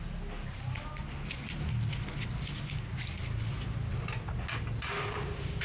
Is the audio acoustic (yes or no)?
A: yes